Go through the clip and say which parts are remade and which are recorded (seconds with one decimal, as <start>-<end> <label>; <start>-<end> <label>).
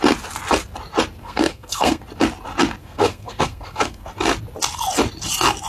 0.0-1.2 recorded; 1.2-2.0 remade; 2.0-2.8 recorded; 2.8-4.1 remade; 4.1-5.7 recorded